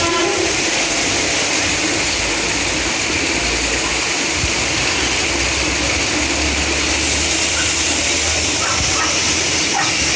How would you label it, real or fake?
real